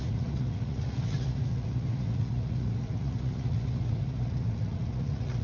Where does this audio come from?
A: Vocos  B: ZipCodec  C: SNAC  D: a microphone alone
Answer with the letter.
A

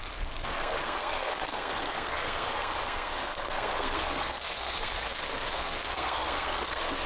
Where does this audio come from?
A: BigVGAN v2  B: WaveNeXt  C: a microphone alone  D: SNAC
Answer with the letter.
D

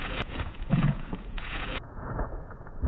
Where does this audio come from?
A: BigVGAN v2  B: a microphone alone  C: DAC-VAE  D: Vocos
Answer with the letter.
D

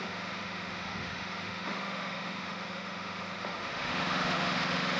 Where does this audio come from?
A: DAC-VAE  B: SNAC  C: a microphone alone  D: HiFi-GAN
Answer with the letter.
A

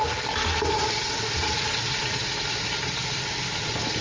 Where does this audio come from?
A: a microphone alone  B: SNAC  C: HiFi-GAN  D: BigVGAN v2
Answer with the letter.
A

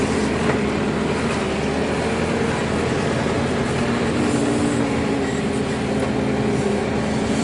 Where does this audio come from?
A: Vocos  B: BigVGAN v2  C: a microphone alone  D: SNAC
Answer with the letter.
C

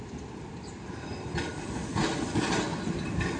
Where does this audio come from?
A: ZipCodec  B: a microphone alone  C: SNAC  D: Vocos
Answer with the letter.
B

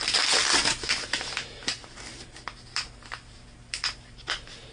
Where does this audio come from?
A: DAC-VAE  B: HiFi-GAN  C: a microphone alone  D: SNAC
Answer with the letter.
C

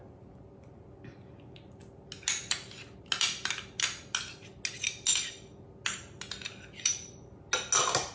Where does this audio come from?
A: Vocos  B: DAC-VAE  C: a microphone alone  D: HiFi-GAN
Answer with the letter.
C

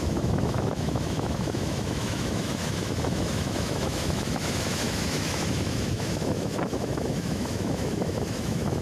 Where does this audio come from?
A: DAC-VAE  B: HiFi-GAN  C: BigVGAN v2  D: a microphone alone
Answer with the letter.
A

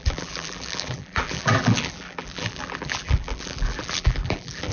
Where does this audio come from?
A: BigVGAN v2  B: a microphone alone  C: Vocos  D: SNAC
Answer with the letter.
A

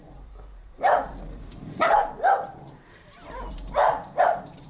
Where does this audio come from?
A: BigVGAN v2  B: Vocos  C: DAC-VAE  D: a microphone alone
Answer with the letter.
A